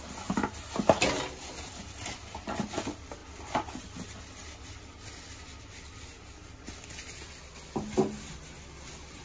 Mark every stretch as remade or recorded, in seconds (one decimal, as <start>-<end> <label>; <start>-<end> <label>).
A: 0.0-9.2 recorded